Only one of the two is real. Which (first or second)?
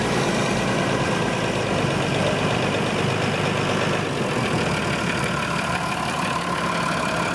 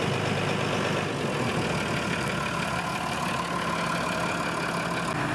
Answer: second